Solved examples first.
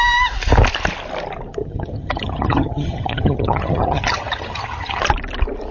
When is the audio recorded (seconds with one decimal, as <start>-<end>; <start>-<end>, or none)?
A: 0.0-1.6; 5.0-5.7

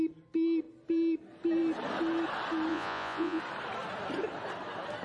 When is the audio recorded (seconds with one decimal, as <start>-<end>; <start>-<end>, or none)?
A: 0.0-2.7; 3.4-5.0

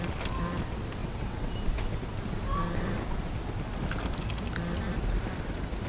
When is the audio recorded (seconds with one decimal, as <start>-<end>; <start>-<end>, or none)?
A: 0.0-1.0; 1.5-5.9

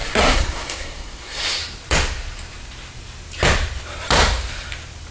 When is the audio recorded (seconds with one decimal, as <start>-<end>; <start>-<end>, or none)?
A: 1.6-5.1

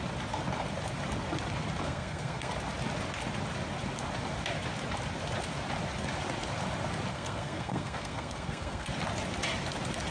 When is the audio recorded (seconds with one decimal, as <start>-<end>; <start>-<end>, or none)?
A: 0.0-1.8; 2.5-7.1; 8.9-10.1

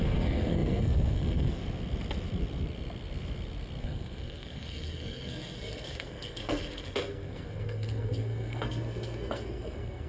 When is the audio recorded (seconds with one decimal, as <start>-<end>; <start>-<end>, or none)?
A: 1.6-3.8